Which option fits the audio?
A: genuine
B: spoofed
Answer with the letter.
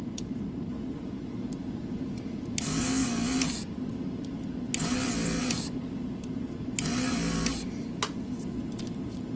A